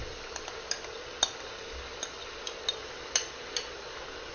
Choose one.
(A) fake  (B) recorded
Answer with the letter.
B